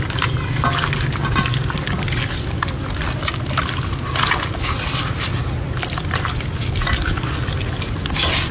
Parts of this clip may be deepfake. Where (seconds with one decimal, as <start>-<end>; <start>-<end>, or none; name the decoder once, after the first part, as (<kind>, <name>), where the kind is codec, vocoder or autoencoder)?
none